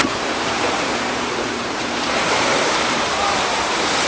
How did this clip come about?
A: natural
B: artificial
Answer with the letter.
B